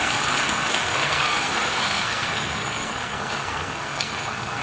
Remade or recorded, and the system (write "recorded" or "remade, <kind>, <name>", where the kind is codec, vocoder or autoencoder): remade, codec, SNAC